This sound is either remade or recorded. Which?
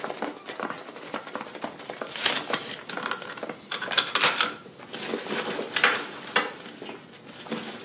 recorded